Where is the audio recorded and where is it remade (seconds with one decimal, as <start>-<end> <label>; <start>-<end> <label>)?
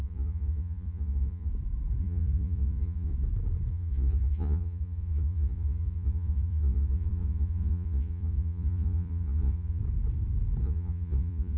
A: 0.0-1.5 remade; 1.5-2.0 recorded; 2.0-3.1 remade; 3.1-3.7 recorded; 3.7-9.8 remade; 9.8-10.6 recorded; 10.6-11.6 remade